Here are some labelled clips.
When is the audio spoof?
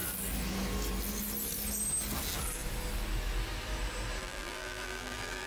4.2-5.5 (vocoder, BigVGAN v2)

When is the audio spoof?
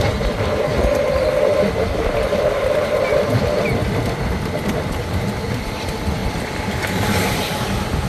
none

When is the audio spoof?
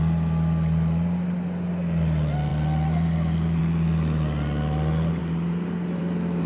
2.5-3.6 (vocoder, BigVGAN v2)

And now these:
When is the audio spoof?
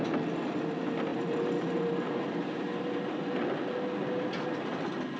1.1-1.9 (vocoder, BigVGAN v2); 2.4-3.4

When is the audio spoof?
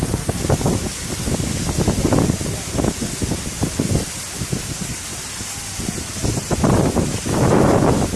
4.9-5.4 (vocoder, BigVGAN v2)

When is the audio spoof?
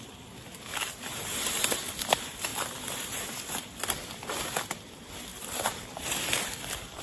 2.5-3.6 (vocoder, BigVGAN v2); 5.3-7.0